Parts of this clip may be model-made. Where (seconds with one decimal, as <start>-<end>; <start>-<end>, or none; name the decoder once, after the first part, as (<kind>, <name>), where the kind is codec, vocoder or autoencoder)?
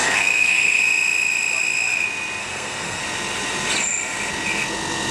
0.0-0.8 (codec, SNAC); 2.4-3.0